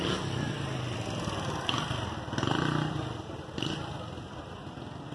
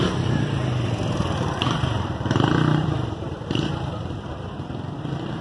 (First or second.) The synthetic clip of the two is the second